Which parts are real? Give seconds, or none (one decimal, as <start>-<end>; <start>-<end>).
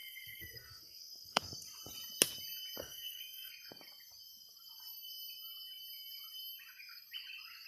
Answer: 1.4-2.8; 3.5-7.7